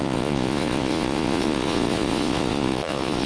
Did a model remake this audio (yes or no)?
yes